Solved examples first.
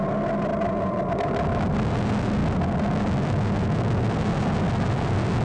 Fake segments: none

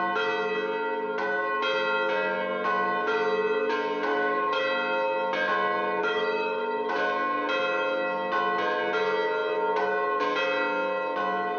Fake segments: 4.1-4.6 (autoencoder, DAC-VAE); 6.0-6.9

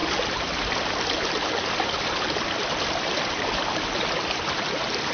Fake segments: none

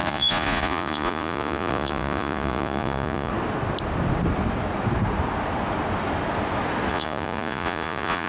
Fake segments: 0.0-3.3 (vocoder, Vocos); 6.9-8.3

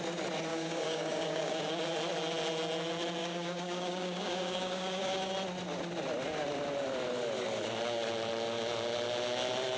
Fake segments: 0.5-1.8 (codec, DAC); 3.2-5.3

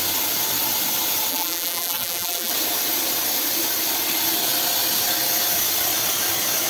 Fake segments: 1.3-2.5 (vocoder, BigVGAN v2)

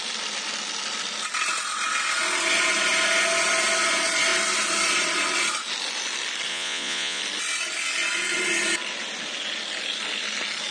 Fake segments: 6.5-7.2 (vocoder, Vocos)

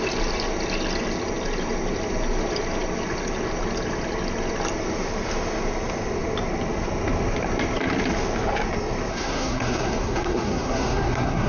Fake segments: 9.1-11.5 (codec, SNAC)